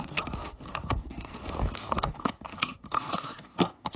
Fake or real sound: fake